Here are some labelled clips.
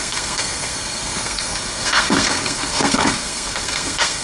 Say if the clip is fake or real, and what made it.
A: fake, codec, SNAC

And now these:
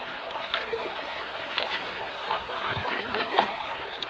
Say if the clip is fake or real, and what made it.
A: fake, codec, SNAC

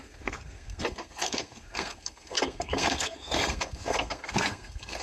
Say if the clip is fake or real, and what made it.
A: fake, codec, SNAC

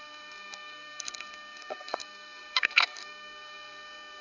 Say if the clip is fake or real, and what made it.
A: fake, codec, SNAC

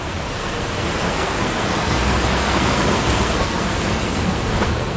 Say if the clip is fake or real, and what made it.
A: fake, codec, SNAC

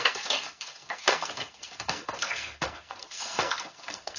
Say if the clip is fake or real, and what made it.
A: fake, codec, SNAC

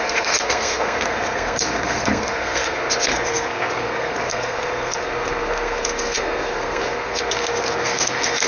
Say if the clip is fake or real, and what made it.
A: fake, codec, SNAC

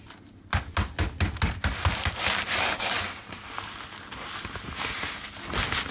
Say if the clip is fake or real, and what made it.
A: real